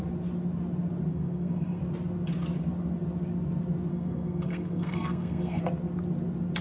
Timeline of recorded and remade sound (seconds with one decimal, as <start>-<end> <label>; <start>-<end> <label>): 0.0-1.1 recorded; 1.1-1.8 remade; 1.8-3.9 recorded; 3.9-5.6 remade; 5.6-6.6 recorded